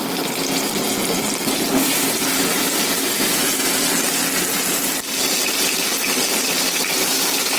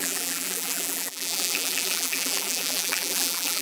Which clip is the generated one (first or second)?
second